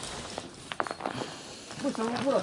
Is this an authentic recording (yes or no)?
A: yes